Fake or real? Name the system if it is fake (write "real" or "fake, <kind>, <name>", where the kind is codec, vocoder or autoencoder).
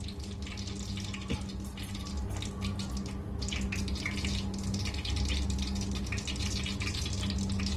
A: real